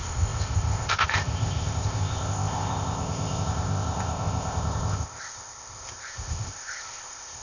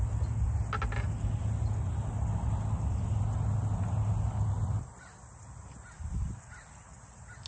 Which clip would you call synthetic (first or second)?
first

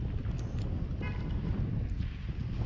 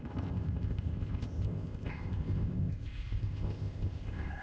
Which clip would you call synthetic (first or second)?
second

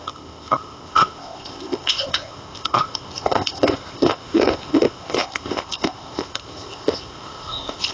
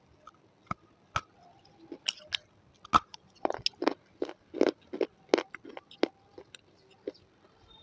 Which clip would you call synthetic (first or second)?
first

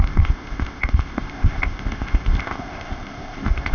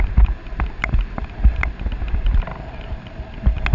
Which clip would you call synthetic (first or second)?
first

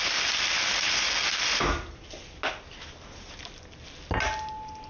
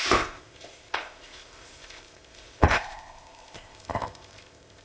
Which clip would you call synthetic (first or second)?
second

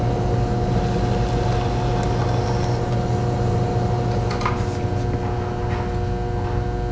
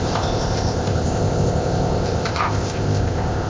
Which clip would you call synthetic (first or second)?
second